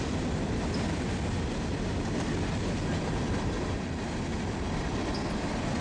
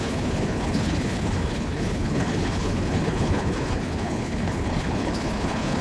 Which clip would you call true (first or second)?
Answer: first